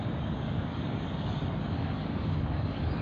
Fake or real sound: fake